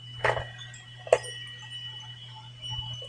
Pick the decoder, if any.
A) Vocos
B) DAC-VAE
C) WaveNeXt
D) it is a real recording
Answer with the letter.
D